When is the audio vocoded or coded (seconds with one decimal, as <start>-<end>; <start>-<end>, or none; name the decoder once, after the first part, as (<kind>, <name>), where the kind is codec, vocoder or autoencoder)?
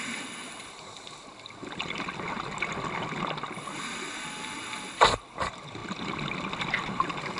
none